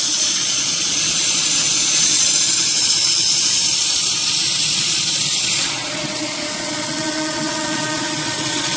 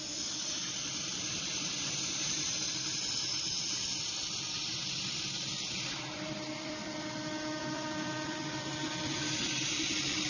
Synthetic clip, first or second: first